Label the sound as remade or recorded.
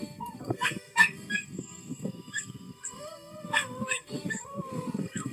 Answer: remade